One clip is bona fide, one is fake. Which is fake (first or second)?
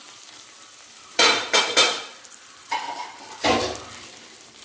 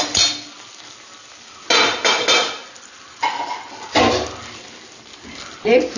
first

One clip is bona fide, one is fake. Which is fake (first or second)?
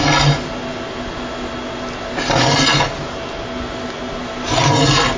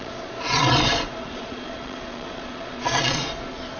second